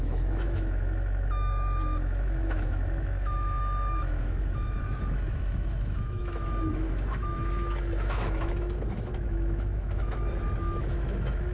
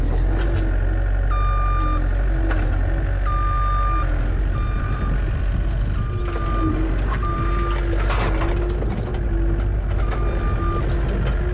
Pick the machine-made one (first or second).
first